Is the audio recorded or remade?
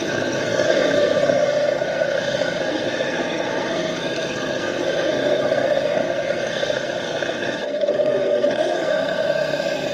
remade